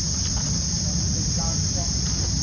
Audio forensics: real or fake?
real